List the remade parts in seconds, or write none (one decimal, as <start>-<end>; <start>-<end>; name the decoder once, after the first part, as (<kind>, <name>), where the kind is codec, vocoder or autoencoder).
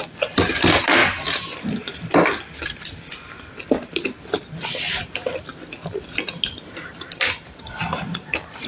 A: 0.0-1.0 (vocoder, BigVGAN v2); 3.5-5.5; 6.5-8.7